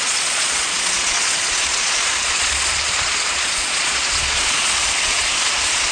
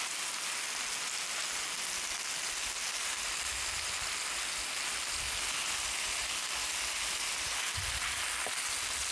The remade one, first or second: first